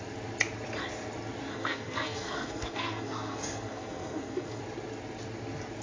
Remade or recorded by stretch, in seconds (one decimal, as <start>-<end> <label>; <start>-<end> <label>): 0.0-1.5 recorded; 1.5-4.6 remade; 4.6-5.8 recorded